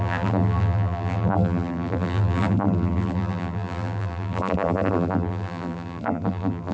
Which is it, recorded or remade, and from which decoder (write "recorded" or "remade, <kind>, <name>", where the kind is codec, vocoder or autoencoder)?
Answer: remade, vocoder, BigVGAN v2